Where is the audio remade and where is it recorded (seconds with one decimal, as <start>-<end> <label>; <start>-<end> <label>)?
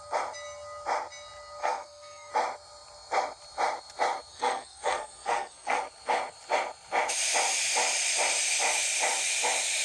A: 0.0-1.6 recorded; 1.6-2.3 remade; 2.3-4.3 recorded; 4.3-5.8 remade; 5.8-9.8 recorded